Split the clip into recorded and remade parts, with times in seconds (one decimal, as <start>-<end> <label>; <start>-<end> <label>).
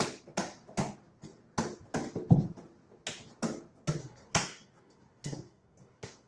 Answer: 0.0-4.0 recorded; 4.0-6.3 remade